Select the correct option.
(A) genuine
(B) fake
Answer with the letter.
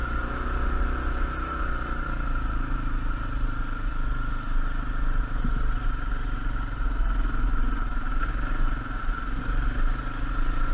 A